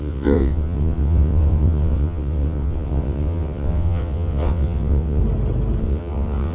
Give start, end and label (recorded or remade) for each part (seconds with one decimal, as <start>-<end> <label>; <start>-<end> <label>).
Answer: 0.0-5.2 remade; 5.2-5.8 recorded; 5.8-6.5 remade